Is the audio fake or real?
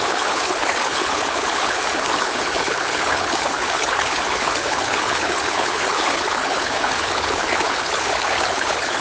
fake